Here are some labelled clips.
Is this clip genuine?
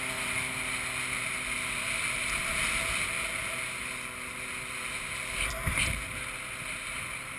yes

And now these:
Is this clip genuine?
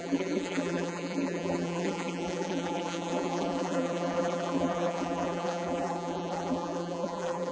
no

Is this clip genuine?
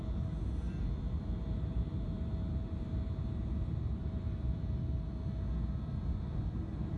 no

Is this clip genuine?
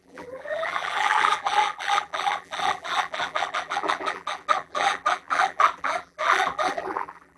no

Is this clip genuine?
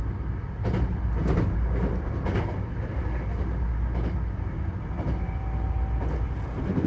yes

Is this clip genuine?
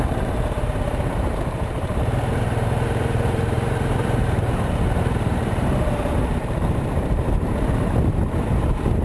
no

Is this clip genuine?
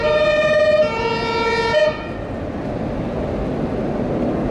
yes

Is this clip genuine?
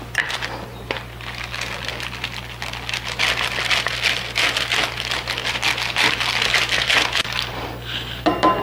yes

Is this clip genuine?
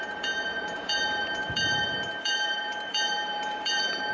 no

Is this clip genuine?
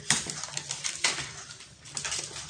yes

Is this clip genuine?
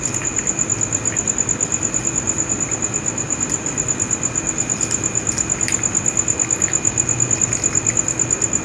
yes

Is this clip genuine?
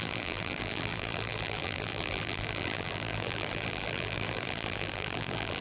no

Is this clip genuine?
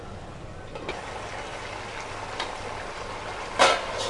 yes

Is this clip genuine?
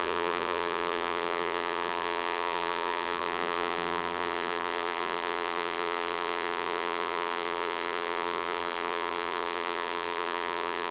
no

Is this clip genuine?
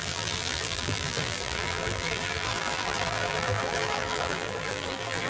no